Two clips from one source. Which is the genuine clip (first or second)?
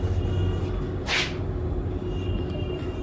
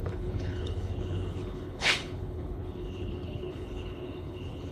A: first